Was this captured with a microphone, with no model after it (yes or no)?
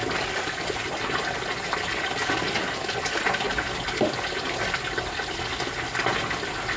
yes